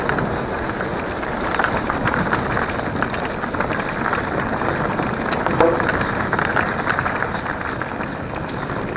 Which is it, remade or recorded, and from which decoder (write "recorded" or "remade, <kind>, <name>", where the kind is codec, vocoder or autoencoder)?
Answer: recorded